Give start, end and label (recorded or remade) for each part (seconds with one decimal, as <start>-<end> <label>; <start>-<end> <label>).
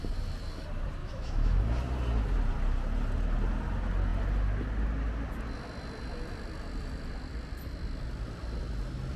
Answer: 0.0-1.0 recorded; 1.0-1.6 remade; 1.6-9.2 recorded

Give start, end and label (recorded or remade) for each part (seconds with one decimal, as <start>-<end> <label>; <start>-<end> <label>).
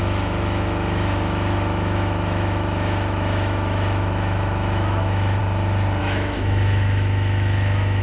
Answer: 0.0-5.4 remade; 5.4-6.0 recorded; 6.0-8.0 remade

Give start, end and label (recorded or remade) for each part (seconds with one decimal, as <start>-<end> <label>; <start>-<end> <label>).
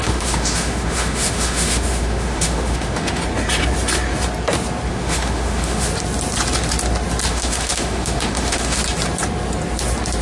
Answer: 0.0-3.2 remade; 3.2-4.9 recorded; 4.9-5.9 remade; 5.9-7.3 recorded; 7.3-8.8 remade; 8.8-10.2 recorded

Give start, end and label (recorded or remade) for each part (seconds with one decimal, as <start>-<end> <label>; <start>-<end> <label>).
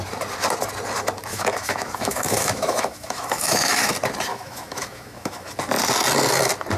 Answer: 0.0-1.3 recorded; 1.3-3.9 remade; 3.9-4.3 recorded; 4.3-5.5 remade; 5.5-6.8 recorded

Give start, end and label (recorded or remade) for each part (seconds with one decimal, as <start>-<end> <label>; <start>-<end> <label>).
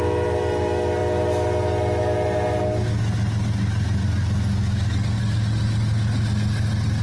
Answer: 0.0-7.0 recorded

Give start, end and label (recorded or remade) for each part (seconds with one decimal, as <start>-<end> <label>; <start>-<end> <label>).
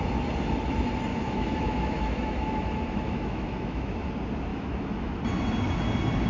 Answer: 0.0-1.1 recorded; 1.1-4.1 remade; 4.1-4.5 recorded; 4.5-5.2 remade; 5.2-6.3 recorded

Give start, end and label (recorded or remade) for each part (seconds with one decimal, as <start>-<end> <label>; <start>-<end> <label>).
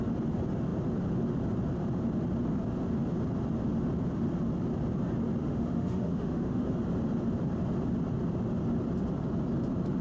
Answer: 0.0-5.4 recorded; 5.4-6.7 remade; 6.7-10.0 recorded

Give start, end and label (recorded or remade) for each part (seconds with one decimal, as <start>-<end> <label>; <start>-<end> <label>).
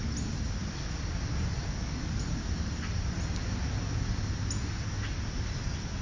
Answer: 0.0-6.0 recorded